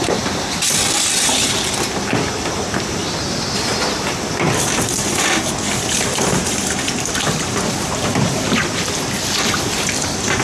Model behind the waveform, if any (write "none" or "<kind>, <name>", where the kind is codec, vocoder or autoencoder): none